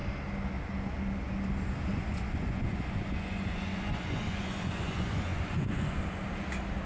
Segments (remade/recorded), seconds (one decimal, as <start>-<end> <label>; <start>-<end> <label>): 0.0-1.9 recorded; 1.9-6.0 remade; 6.0-6.9 recorded